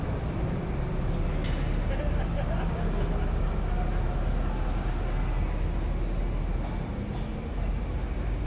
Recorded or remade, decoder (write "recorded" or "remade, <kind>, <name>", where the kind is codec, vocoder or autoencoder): recorded